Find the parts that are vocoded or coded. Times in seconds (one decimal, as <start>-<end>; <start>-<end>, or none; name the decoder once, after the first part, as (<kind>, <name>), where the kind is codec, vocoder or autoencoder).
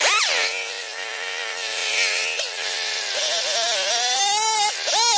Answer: none